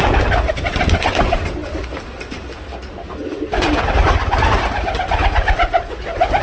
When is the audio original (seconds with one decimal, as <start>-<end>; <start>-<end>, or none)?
0.0-6.4

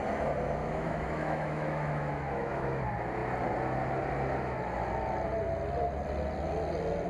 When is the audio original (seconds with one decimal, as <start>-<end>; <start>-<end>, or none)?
0.0-0.6; 2.8-7.1

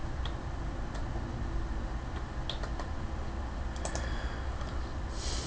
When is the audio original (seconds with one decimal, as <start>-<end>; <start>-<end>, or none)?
0.0-5.5